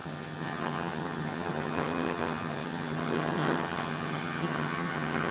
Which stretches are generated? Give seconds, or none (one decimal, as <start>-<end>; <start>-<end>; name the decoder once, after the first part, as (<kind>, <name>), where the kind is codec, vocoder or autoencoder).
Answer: 0.0-5.3 (vocoder, HiFi-GAN)